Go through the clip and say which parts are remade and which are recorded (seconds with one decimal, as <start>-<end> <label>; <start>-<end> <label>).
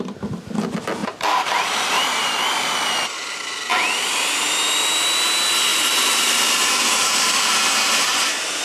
0.0-1.0 recorded; 1.0-2.3 remade; 2.3-5.7 recorded; 5.7-8.6 remade